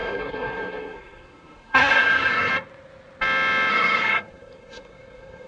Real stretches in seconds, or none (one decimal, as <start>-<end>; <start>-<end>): 2.5-3.7